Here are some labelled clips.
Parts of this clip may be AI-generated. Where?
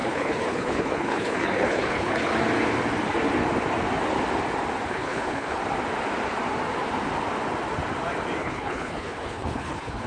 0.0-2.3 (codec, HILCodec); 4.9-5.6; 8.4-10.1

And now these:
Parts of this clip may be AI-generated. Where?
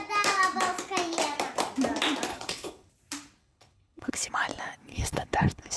2.3-2.9 (codec, HILCodec); 3.4-4.3; 4.9-5.8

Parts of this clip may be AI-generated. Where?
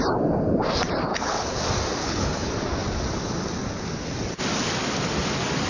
1.1-1.6 (codec, HILCodec); 2.0-2.5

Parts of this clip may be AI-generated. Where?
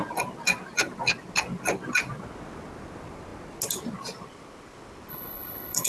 5.1-5.9 (codec, HILCodec)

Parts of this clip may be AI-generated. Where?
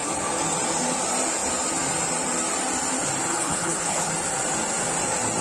3.3-4.1 (codec, HILCodec)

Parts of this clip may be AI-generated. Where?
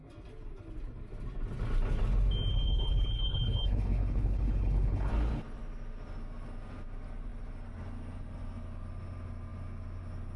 2.5-5.1 (codec, HILCodec)